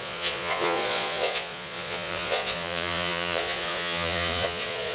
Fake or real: fake